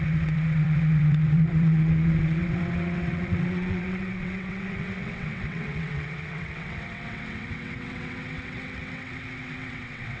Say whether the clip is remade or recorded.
remade